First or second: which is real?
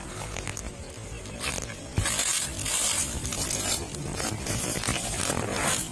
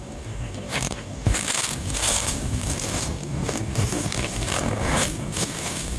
first